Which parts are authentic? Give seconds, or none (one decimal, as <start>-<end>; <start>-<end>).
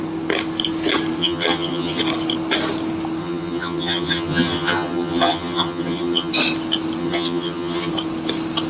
0.0-1.2; 2.0-3.2; 6.3-7.0; 7.9-8.7